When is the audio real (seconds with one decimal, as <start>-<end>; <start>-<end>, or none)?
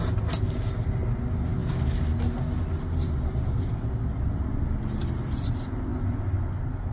0.0-6.9